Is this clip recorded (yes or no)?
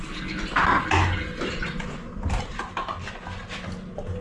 yes